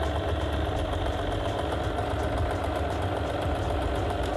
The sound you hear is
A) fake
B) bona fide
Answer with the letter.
B